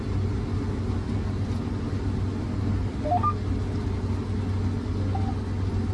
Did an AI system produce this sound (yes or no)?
no